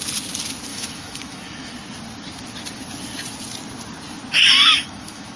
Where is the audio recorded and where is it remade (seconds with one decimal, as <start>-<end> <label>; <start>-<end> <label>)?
0.0-0.7 recorded; 0.7-1.7 remade; 1.7-4.7 recorded; 4.7-5.4 remade

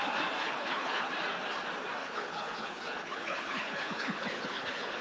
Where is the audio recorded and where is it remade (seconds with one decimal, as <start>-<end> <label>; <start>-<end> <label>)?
0.0-0.4 recorded; 0.4-1.1 remade; 1.1-2.0 recorded; 2.0-5.0 remade

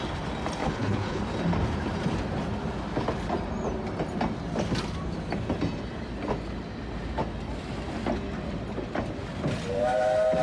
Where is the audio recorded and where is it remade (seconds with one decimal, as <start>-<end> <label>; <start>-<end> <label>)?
0.0-0.6 recorded; 0.6-1.2 remade; 1.2-10.4 recorded

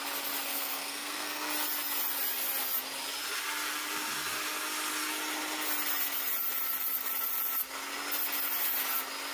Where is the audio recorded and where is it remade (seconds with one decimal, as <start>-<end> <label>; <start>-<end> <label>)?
0.0-0.5 recorded; 0.5-1.5 remade; 1.5-9.3 recorded